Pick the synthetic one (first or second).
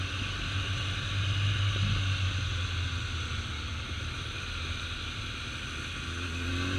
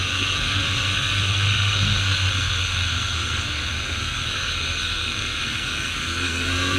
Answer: second